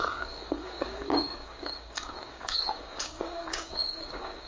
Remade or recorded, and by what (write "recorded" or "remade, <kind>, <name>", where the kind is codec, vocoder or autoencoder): remade, codec, DAC